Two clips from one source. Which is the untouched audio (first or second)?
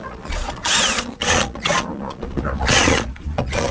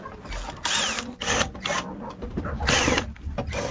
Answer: second